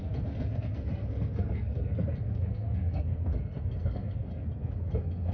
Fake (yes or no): yes